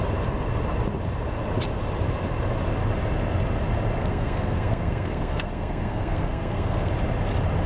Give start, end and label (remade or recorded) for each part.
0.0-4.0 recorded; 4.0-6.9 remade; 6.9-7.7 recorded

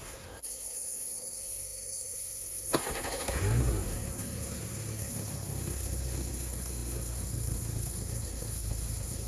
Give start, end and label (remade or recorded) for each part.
0.0-9.3 remade

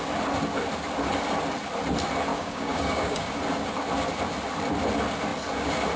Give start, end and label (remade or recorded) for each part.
0.0-2.3 recorded; 2.3-3.3 remade; 3.3-6.0 recorded

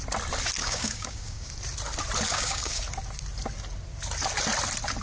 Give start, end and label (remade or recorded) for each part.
0.0-0.6 recorded; 0.6-1.5 remade; 1.5-2.3 recorded; 2.3-2.8 remade; 2.8-5.0 recorded